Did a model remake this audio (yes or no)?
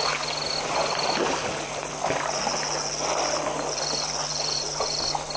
no